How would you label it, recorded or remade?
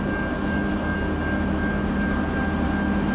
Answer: recorded